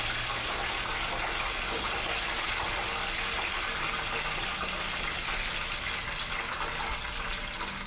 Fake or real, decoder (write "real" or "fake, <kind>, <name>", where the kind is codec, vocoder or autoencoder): real